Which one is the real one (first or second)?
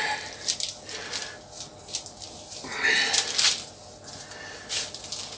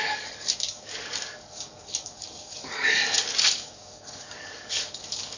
first